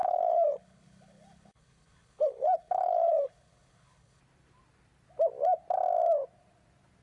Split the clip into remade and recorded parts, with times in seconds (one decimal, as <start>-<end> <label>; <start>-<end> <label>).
0.0-4.2 remade; 4.2-7.0 recorded